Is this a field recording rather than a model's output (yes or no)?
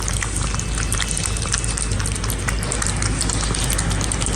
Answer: yes